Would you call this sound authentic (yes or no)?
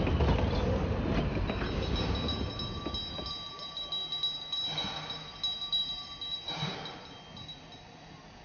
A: yes